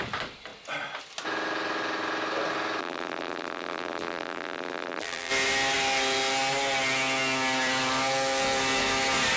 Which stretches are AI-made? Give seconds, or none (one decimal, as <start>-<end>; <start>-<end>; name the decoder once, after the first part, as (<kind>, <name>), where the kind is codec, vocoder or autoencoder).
2.8-5.3 (vocoder, BigVGAN v2)